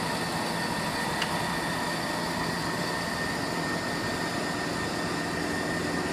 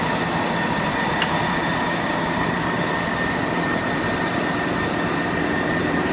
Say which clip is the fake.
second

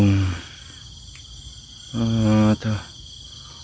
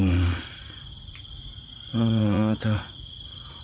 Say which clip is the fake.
second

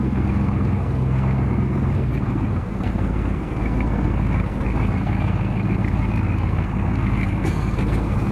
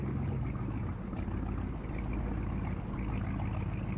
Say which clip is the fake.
first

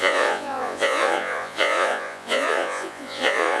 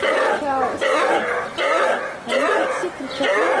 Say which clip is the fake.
first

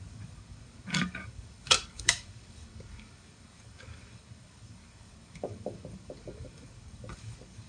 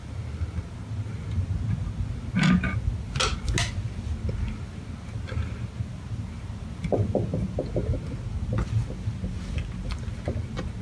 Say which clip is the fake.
first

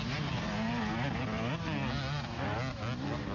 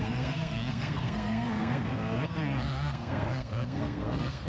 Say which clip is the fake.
second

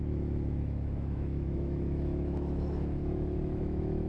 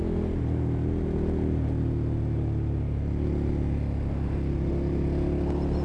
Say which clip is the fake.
first